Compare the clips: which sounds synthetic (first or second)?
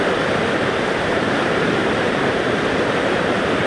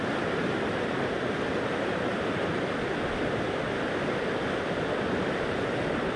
first